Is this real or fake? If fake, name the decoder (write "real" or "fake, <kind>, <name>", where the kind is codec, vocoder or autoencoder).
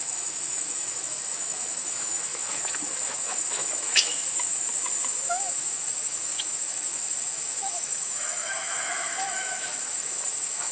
fake, autoencoder, DAC-VAE